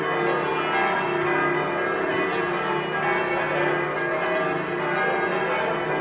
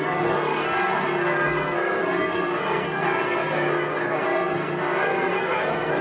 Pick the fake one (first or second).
second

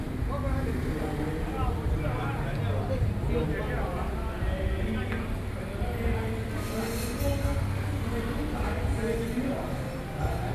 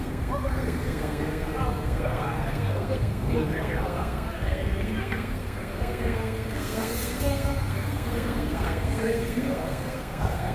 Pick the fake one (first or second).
second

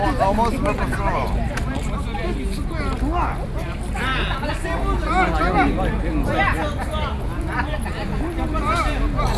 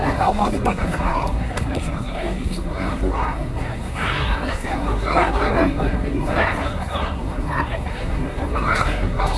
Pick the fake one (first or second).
second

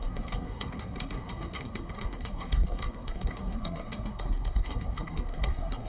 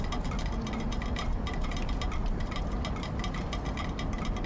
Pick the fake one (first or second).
first